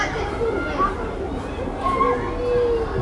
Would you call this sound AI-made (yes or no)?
no